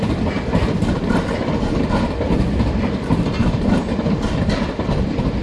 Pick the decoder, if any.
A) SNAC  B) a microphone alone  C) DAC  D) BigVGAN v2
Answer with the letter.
B